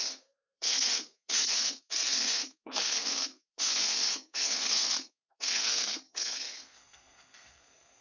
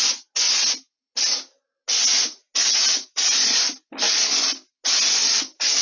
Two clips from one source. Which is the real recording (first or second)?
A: second